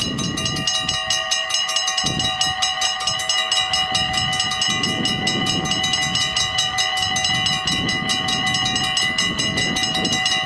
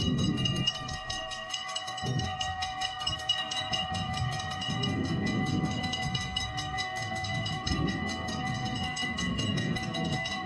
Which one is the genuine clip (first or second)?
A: first